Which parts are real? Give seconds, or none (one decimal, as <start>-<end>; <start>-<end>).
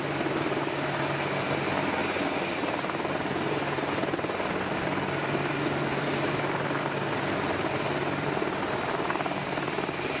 0.0-10.2